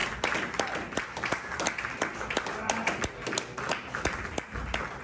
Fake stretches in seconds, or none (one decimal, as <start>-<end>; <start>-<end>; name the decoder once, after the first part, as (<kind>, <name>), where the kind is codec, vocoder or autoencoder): none